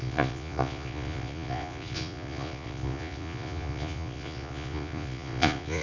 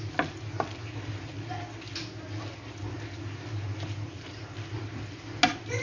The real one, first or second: second